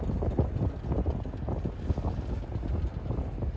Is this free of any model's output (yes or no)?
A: yes